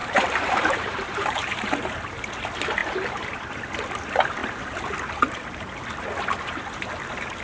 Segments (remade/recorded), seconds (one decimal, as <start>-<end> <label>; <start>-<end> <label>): 0.0-2.3 remade; 2.3-7.4 recorded